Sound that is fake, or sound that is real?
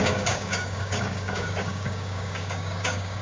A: fake